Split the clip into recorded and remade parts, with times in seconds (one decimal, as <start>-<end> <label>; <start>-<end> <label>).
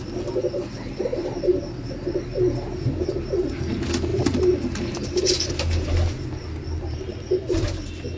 0.0-1.1 recorded; 1.1-1.8 remade; 1.8-4.1 recorded; 4.1-5.5 remade; 5.5-8.2 recorded